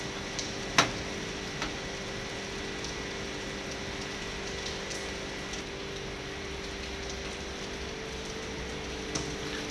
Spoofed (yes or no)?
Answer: no